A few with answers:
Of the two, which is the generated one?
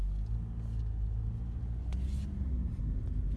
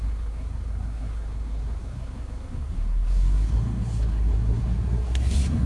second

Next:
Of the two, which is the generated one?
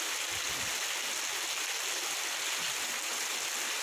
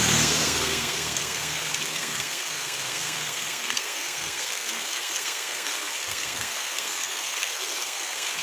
second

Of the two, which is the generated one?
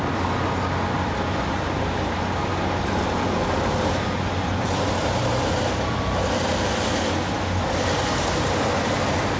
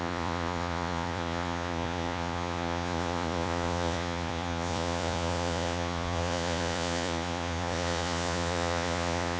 second